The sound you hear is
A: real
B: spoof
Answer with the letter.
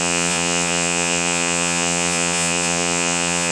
B